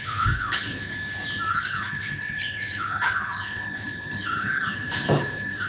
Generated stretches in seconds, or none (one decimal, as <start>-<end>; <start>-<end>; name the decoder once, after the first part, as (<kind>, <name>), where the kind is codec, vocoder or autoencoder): 0.0-0.9 (codec, HILCodec); 1.5-5.7